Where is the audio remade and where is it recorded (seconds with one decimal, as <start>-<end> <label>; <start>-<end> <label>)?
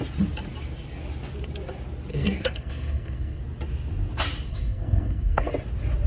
0.0-2.1 recorded; 2.1-3.4 remade; 3.4-4.5 recorded; 4.5-5.5 remade; 5.5-6.1 recorded